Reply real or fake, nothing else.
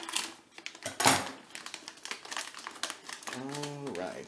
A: real